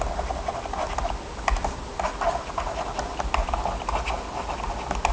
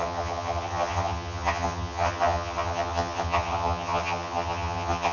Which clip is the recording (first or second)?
first